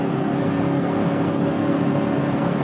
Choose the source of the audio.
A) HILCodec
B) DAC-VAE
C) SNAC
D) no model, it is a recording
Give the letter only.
C